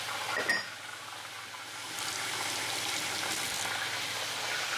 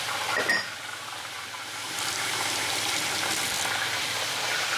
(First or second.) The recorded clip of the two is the first